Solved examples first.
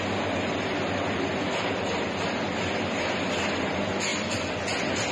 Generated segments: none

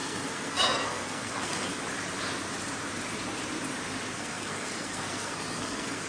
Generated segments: 0.0-1.7 (codec, SNAC); 4.1-6.1

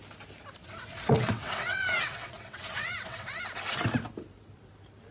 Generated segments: 0.6-3.4 (vocoder, WaveNeXt)

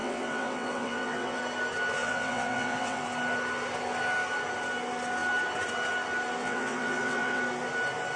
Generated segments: 0.0-1.4 (vocoder, WaveNeXt); 2.0-3.0; 6.4-7.4

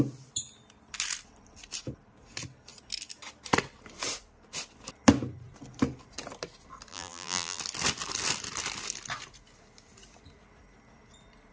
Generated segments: 6.9-7.6 (vocoder, BigVGAN v2)